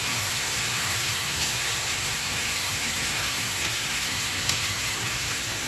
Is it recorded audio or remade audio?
remade